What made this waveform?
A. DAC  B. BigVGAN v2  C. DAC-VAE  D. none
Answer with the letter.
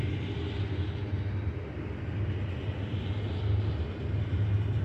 D